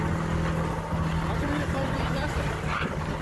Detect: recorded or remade recorded